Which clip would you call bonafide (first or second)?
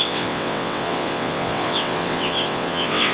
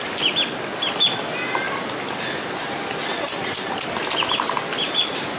second